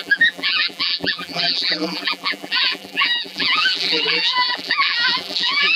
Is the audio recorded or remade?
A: remade